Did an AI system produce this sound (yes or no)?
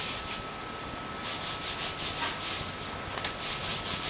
no